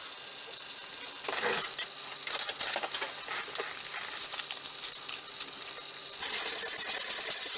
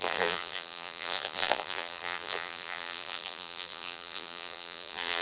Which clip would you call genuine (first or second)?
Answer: first